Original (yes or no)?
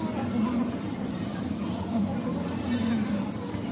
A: yes